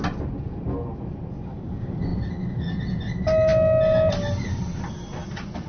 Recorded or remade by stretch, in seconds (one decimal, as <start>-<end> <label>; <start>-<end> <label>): 0.0-5.7 recorded